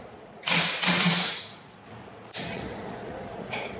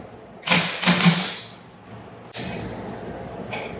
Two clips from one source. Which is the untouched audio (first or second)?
second